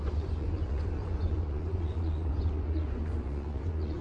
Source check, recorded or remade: remade